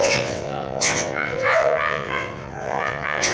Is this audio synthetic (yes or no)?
yes